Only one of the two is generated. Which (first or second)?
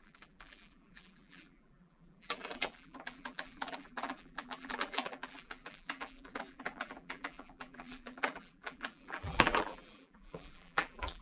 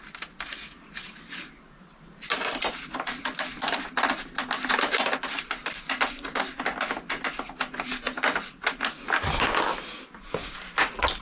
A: first